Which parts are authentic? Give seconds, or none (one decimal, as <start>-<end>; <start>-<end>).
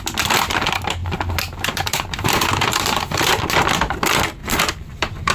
0.0-1.0; 3.4-4.4